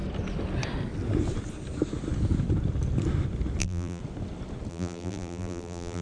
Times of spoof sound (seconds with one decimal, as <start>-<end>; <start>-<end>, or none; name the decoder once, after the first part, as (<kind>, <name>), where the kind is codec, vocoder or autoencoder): 3.6-4.0 (vocoder, BigVGAN v2); 4.7-6.0

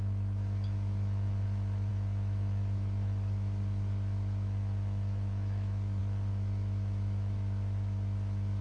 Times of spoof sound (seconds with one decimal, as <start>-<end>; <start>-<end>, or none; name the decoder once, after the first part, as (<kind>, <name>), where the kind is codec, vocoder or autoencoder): 0.0-8.6 (autoencoder, DAC-VAE)

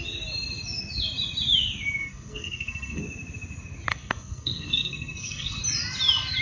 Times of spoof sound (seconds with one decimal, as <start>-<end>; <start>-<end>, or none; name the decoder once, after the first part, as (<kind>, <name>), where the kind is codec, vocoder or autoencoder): 2.0-3.0 (codec, SNAC); 3.9-5.6

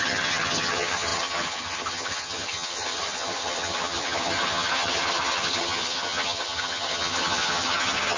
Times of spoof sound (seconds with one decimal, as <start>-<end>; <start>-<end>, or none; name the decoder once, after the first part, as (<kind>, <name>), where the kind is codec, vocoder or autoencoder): 0.0-8.2 (vocoder, HiFi-GAN)